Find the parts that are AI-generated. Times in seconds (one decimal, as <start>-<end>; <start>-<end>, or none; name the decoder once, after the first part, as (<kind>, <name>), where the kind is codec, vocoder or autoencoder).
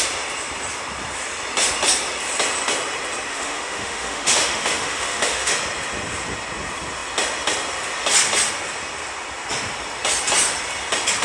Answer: 3.3-5.5 (autoencoder, DAC-VAE)